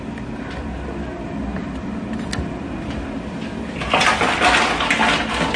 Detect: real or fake real